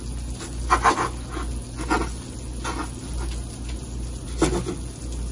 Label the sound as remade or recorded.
recorded